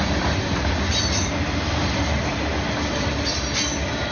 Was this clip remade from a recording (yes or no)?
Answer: no